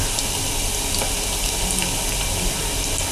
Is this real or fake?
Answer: real